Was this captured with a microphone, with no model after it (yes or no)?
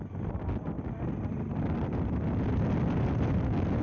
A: yes